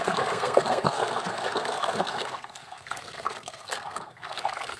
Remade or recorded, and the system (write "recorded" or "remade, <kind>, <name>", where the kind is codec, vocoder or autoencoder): remade, codec, SNAC